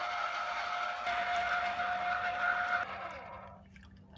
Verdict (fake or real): real